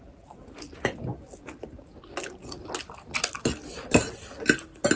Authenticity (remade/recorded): recorded